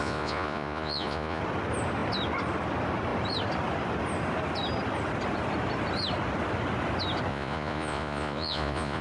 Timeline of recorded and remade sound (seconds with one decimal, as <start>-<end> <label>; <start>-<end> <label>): 0.0-1.4 remade; 1.4-7.3 recorded; 7.3-9.0 remade

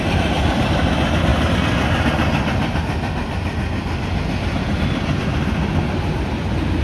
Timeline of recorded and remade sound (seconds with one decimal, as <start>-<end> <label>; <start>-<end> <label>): 0.0-6.8 recorded

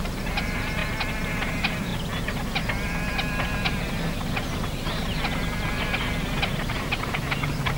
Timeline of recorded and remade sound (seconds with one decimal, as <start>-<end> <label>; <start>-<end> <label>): 0.0-0.8 remade; 0.8-1.5 recorded; 1.5-1.9 remade; 1.9-6.6 recorded; 6.6-7.8 remade

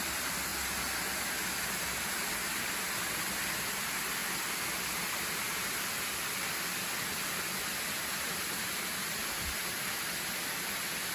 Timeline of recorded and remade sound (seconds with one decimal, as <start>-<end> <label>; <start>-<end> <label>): 0.0-11.1 recorded

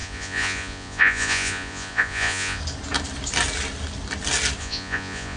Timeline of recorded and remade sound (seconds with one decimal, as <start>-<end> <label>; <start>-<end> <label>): 0.0-2.6 remade; 2.6-4.6 recorded; 4.6-5.4 remade

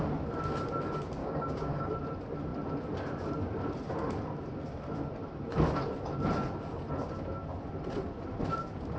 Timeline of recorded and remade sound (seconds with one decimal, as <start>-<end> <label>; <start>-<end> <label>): 0.0-1.2 recorded; 1.2-1.9 remade; 1.9-9.0 recorded

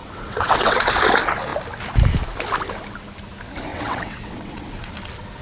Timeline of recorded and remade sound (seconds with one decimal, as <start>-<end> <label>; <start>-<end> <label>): 0.0-0.9 remade; 0.9-3.7 recorded; 3.7-4.9 remade; 4.9-5.4 recorded